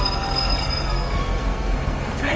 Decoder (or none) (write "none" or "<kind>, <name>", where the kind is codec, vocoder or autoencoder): codec, SNAC